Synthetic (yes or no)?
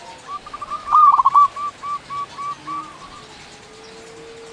no